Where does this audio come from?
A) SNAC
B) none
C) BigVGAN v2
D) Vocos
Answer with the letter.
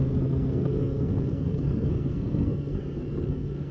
A